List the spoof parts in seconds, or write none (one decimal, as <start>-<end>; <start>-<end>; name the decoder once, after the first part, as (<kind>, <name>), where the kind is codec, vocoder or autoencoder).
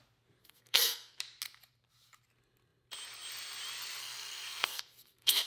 0.4-1.2 (codec, SNAC); 4.0-5.5